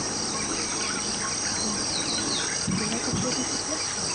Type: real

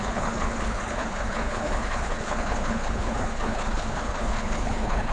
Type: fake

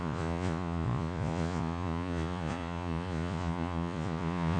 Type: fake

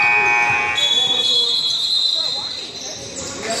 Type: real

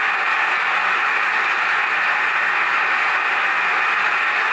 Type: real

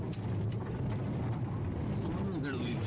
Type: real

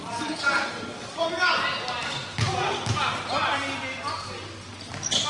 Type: real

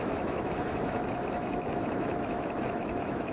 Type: fake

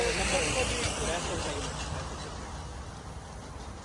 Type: real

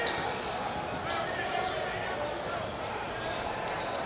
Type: real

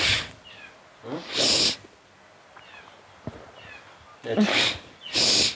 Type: real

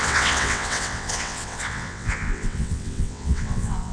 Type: fake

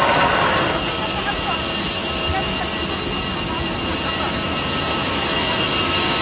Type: real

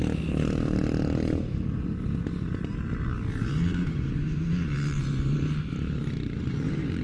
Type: fake